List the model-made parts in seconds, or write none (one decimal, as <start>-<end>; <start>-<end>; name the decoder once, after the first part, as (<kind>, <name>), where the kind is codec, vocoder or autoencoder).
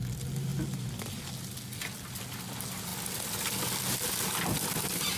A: none